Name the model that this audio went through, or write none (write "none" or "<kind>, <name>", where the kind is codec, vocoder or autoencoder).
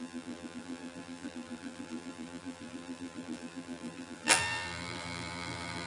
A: vocoder, BigVGAN v2